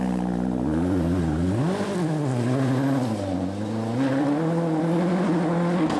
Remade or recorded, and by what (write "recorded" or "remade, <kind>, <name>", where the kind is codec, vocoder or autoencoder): recorded